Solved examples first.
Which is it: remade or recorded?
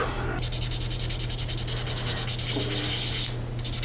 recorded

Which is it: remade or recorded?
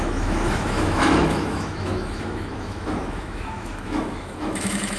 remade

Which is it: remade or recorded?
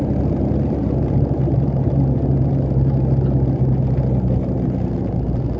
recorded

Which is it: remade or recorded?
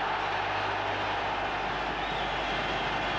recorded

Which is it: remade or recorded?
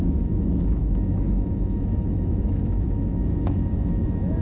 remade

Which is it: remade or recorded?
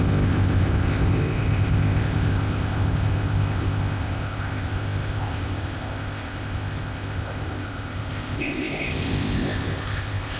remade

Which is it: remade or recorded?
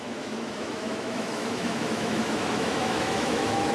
remade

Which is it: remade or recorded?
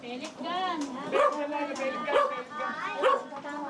recorded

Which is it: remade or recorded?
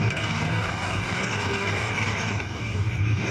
remade